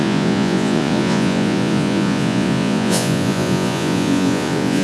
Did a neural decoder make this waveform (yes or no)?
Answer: yes